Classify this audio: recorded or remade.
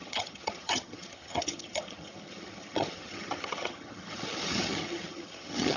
remade